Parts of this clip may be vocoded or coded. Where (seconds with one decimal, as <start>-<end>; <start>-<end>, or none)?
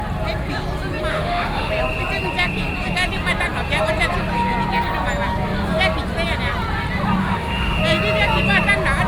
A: 1.1-1.7; 7.2-7.8